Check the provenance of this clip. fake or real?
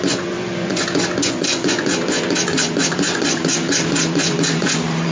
fake